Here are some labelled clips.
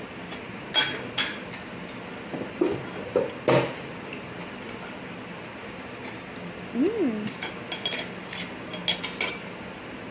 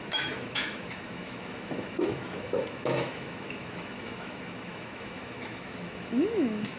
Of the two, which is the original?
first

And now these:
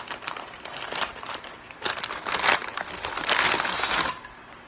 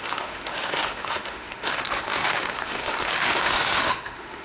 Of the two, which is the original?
first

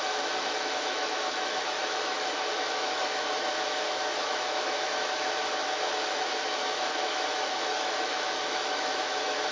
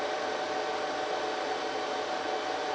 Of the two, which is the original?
second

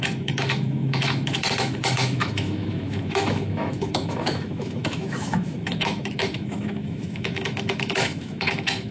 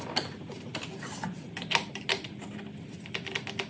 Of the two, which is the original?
second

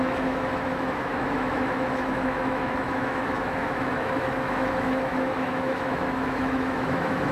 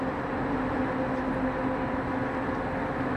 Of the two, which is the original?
second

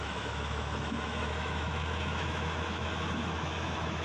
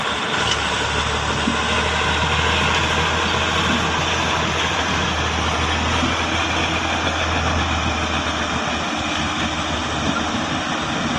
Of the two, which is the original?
second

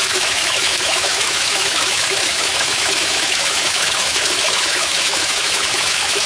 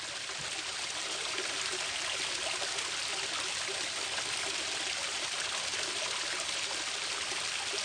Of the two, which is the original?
second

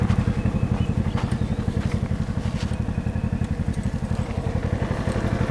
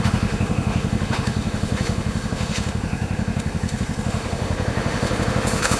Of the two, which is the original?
first